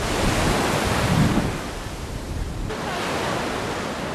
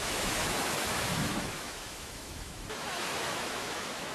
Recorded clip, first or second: first